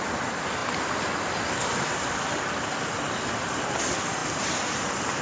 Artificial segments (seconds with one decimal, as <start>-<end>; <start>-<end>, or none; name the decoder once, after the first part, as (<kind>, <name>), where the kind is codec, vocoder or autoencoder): none